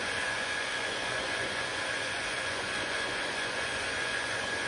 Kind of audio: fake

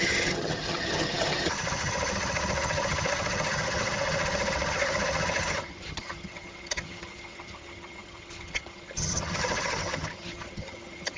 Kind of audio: fake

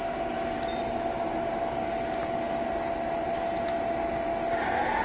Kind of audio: real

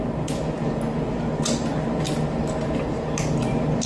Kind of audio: real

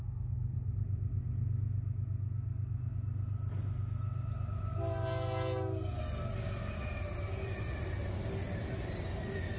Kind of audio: real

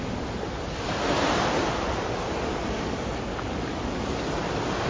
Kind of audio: real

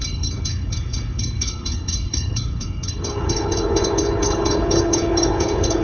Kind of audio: fake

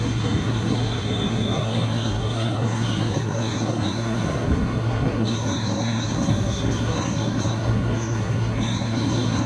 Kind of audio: fake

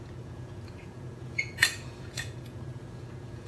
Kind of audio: fake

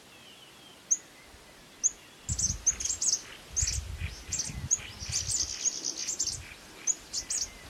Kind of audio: real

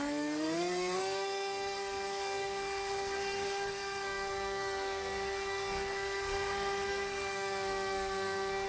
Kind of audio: fake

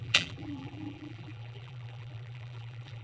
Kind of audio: fake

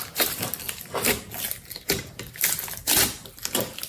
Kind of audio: real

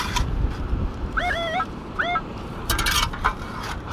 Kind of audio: fake